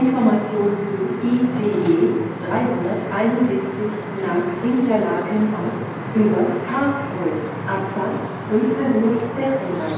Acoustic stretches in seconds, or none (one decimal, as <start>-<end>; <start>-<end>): 0.0-4.3; 5.0-6.7; 7.3-8.2